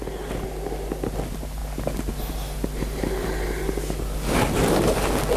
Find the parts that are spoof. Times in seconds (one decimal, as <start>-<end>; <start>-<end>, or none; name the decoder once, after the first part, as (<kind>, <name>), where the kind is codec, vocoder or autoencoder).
none